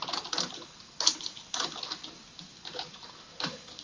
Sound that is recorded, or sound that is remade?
recorded